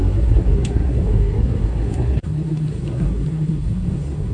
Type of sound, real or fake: fake